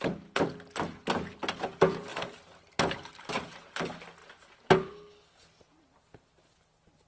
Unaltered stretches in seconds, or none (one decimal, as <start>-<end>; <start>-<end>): 0.0-7.1